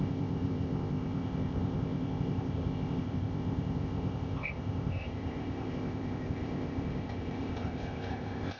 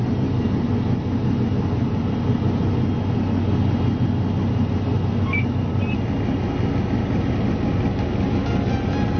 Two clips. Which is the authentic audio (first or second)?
second